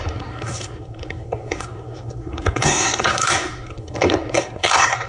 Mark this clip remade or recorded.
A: remade